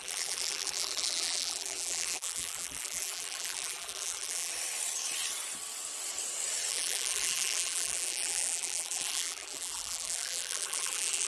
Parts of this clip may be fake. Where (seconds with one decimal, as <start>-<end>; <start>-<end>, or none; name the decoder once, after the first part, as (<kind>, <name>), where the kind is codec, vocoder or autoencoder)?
0.0-4.5 (vocoder, BigVGAN v2); 6.7-11.3